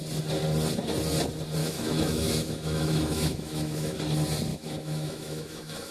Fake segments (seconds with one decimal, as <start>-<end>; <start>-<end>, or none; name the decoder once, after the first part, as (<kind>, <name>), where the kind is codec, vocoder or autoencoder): 1.6-4.0 (autoencoder, DAC-VAE); 4.5-5.9